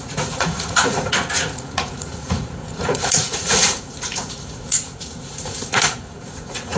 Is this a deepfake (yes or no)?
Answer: yes